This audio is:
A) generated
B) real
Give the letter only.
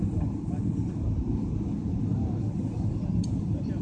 B